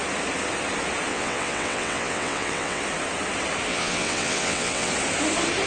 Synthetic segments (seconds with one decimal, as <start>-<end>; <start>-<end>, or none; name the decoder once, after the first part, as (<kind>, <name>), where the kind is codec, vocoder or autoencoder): 1.1-2.8 (vocoder, WaveNeXt); 3.7-4.9